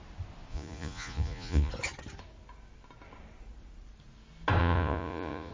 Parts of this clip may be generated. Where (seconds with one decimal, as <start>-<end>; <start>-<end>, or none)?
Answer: 0.5-1.7; 4.6-5.5